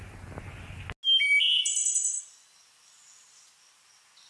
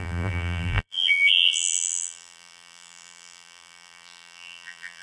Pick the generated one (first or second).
second